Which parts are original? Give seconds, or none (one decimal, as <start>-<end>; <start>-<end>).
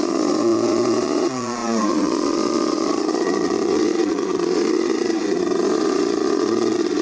none